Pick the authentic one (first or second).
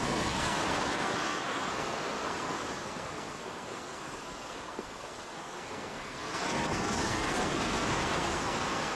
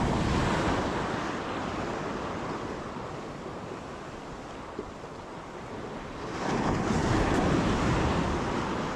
second